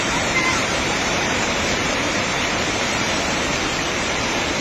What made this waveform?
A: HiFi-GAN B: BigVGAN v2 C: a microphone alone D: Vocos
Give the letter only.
B